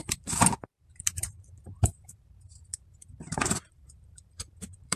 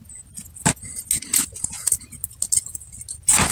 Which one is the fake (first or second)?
first